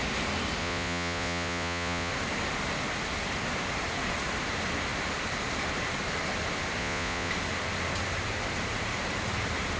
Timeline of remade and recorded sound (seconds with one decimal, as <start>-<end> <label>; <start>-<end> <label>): 0.0-0.6 recorded; 0.6-2.1 remade; 2.1-6.8 recorded; 6.8-7.3 remade; 7.3-9.8 recorded